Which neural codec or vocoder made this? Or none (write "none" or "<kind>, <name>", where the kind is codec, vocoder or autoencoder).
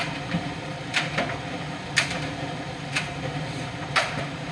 vocoder, BigVGAN v2